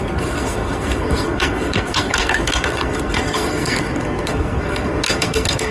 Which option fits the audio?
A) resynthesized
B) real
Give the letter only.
A